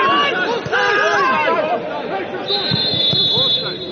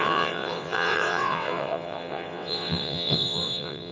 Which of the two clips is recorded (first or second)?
first